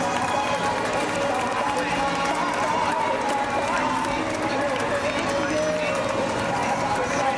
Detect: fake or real real